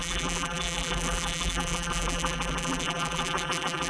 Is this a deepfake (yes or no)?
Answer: yes